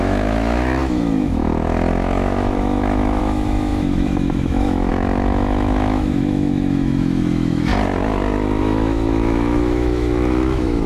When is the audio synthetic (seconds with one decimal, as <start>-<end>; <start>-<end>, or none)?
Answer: 0.0-7.7; 8.6-10.9